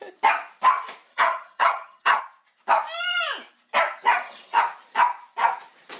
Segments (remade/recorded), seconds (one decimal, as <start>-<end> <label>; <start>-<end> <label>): 0.0-1.1 recorded; 1.1-2.2 remade; 2.2-4.1 recorded; 4.1-4.6 remade; 4.6-6.0 recorded